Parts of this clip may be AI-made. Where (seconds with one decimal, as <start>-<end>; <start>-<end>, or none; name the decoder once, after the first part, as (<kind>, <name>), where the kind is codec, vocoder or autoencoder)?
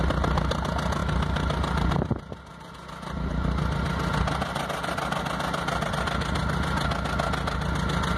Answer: none